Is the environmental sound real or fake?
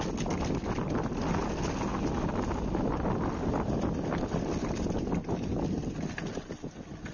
real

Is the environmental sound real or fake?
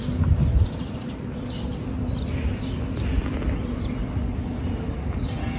real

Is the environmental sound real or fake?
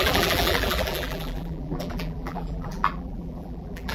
fake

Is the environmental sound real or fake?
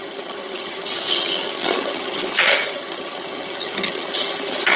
fake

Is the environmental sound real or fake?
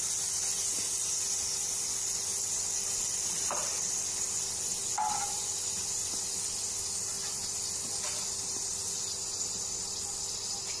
real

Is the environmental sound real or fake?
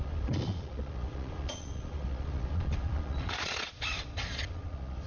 fake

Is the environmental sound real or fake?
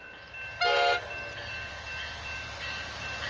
real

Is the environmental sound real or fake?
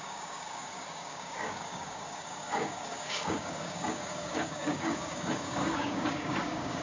fake